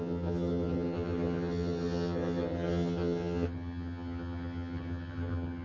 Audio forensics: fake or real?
fake